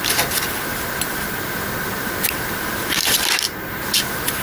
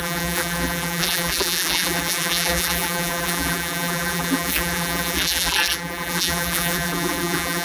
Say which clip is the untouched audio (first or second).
first